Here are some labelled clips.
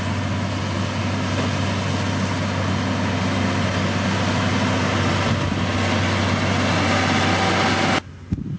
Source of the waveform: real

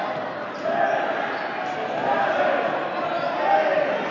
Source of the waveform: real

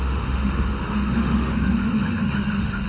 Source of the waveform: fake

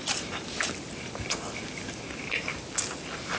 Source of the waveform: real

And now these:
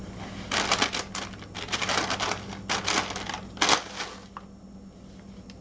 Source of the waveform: real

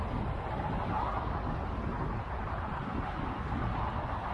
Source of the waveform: real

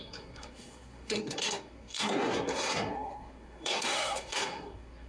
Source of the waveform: fake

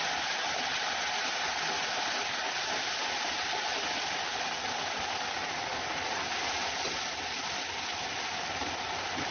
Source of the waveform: real